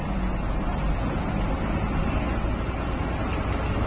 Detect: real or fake real